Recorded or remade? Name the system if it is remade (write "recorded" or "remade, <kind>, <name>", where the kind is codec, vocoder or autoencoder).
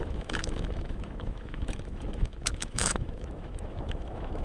remade, autoencoder, DAC-VAE